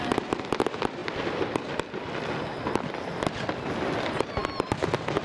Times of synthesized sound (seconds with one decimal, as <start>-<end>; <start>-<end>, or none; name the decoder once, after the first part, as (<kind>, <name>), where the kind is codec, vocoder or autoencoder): none